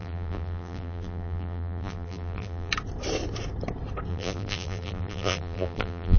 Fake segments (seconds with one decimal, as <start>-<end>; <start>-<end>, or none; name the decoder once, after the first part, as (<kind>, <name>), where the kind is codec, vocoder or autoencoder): 0.0-2.7 (vocoder, BigVGAN v2); 4.1-6.2